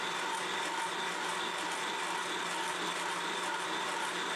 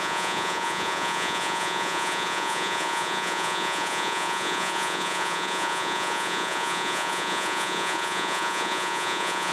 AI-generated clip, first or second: second